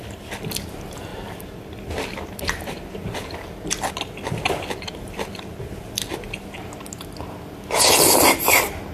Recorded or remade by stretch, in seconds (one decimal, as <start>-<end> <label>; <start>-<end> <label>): 0.0-8.9 recorded